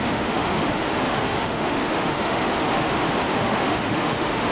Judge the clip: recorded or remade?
remade